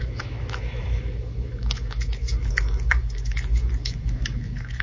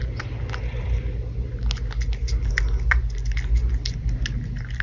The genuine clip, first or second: second